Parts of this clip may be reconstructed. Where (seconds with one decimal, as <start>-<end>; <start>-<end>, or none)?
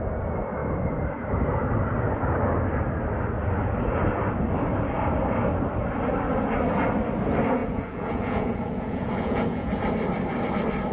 7.6-9.7